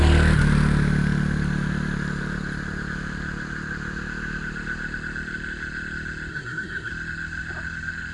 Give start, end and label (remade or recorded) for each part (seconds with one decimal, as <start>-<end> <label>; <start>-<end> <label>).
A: 0.0-6.3 recorded; 6.3-6.9 remade; 6.9-8.1 recorded